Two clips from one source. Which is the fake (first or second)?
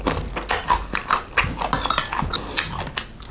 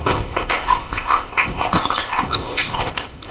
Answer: second